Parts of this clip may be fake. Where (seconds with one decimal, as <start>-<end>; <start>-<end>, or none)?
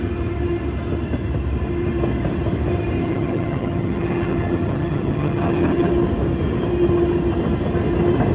3.0-5.9